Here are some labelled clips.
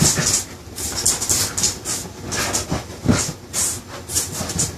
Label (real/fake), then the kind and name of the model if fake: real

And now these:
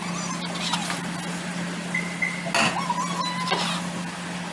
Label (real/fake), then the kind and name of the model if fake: real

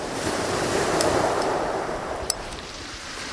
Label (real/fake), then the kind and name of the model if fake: fake, vocoder, BigVGAN v2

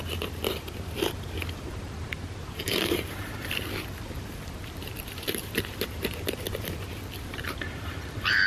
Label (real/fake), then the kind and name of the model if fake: fake, vocoder, BigVGAN v2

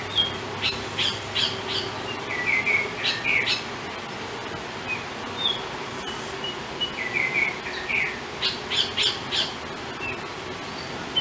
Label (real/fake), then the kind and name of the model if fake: real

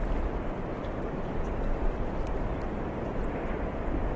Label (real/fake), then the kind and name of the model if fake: real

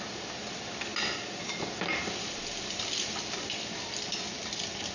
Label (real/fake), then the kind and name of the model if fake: real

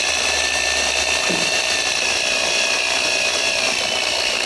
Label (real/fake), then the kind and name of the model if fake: fake, vocoder, BigVGAN v2